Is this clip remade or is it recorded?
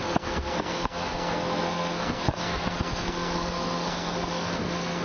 remade